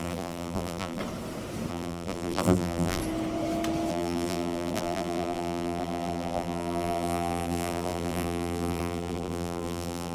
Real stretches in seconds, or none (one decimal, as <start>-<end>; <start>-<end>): 1.0-1.7; 3.0-3.9